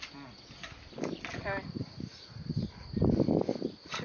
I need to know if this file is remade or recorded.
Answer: recorded